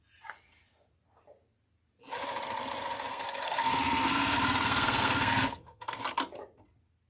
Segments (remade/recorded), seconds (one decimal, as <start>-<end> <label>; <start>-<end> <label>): 0.0-3.1 recorded; 3.1-6.0 remade; 6.0-7.1 recorded